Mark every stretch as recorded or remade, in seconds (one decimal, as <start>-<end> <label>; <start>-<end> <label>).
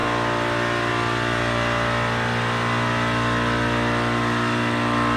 0.0-5.2 recorded